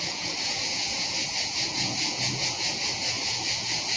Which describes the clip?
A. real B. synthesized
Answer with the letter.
B